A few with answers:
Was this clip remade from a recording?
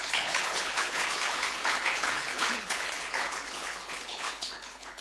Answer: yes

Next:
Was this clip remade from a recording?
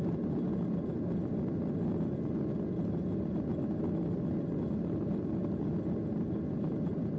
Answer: no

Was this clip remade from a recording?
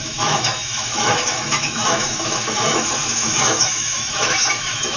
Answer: yes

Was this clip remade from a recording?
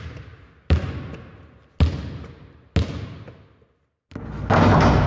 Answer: no